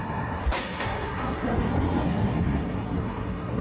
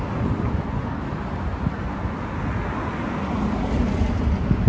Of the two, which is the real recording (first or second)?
second